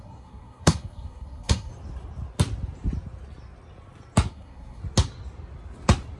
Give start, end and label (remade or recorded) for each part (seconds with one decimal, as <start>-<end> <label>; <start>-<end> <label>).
0.0-1.7 remade; 1.7-4.3 recorded; 4.3-4.8 remade; 4.8-6.2 recorded